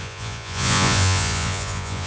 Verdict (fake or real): fake